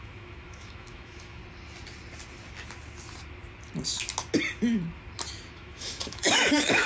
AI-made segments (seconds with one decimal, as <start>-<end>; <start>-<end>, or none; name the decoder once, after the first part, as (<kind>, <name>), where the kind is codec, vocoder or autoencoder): 0.0-1.4 (autoencoder, DAC-VAE); 5.5-6.9